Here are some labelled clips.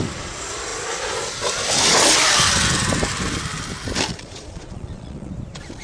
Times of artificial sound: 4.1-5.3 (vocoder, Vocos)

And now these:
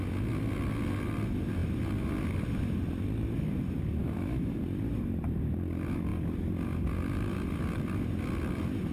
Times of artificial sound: 4.0-4.6 (autoencoder, DAC-VAE)

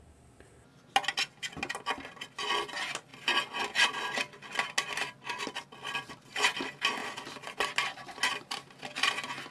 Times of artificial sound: none

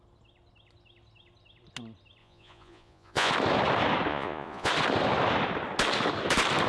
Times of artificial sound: 2.2-3.3 (vocoder, Vocos); 4.1-4.7

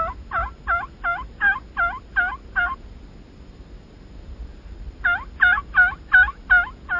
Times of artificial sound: 2.4-5.6 (vocoder, BigVGAN v2)

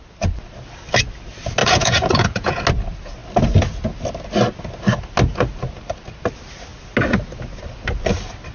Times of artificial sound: 1.6-2.6 (vocoder, Vocos)

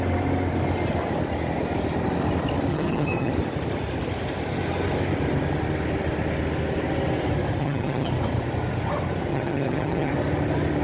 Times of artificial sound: 2.7-3.3 (vocoder, HiFi-GAN); 7.6-8.1; 9.3-10.1

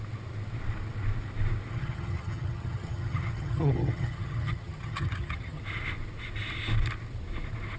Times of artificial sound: 1.7-5.6 (vocoder, HiFi-GAN)